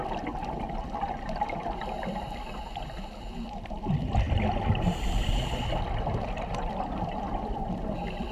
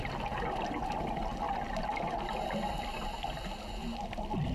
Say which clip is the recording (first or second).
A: second